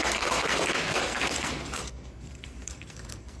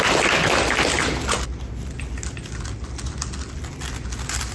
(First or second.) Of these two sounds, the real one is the second